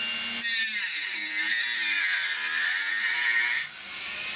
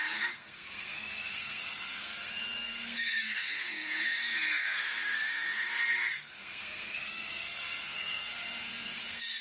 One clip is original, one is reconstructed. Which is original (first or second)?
first